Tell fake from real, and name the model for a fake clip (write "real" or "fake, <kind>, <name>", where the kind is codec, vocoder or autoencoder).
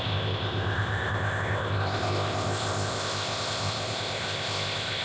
fake, codec, ZipCodec